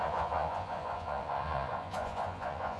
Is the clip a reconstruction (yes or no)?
yes